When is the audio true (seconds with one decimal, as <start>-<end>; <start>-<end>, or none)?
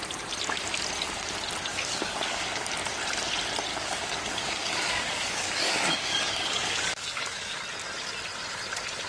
0.0-1.7; 2.7-3.7; 7.6-9.1